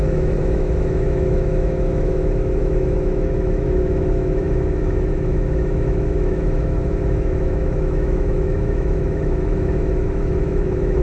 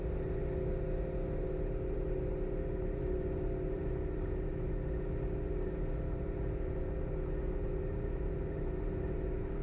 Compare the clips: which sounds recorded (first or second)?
second